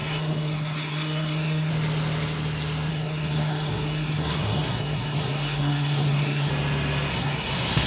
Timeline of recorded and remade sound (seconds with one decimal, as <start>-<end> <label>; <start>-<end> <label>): 0.0-1.7 remade; 1.7-2.9 recorded; 2.9-6.5 remade; 6.5-7.1 recorded; 7.1-7.9 remade